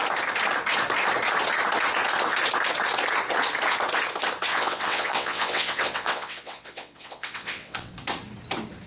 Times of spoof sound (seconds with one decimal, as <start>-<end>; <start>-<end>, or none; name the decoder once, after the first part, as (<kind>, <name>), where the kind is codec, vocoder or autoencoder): 4.5-7.9 (vocoder, WaveNeXt)